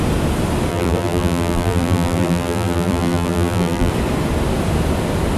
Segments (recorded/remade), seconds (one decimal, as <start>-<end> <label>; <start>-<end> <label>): 0.0-0.7 recorded; 0.7-3.9 remade; 3.9-5.4 recorded

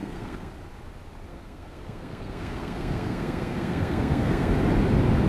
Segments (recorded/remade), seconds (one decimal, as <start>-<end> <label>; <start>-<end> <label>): 0.0-0.5 remade; 0.5-1.3 recorded; 1.3-4.5 remade; 4.5-5.3 recorded

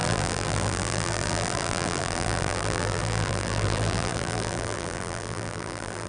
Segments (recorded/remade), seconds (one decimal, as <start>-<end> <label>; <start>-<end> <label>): 0.0-6.1 remade